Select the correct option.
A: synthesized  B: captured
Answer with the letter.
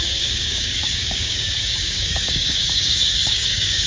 A